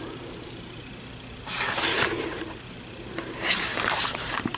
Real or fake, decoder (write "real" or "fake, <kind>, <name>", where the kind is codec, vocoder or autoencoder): fake, vocoder, BigVGAN v2